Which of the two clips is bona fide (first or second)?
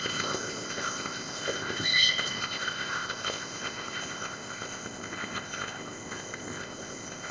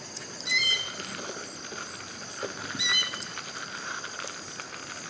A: second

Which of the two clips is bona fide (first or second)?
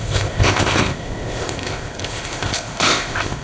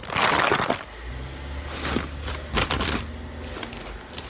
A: second